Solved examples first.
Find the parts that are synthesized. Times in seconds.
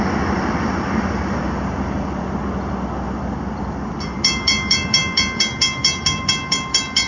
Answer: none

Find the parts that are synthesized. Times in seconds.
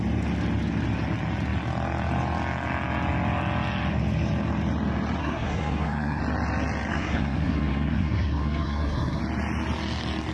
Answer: 5.2-6.2 (codec, SNAC); 6.9-9.2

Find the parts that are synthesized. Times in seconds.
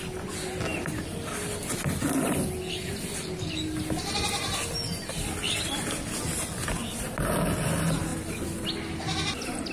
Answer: none